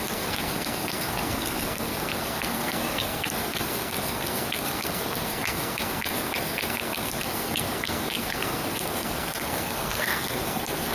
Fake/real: fake